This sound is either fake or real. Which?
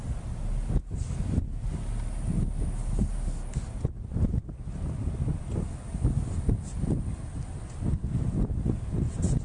real